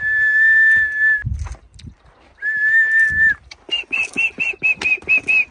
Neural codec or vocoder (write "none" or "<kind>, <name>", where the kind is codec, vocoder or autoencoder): none